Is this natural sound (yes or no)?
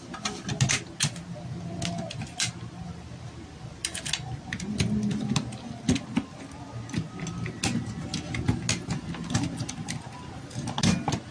yes